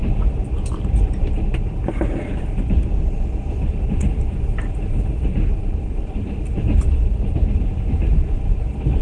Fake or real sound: fake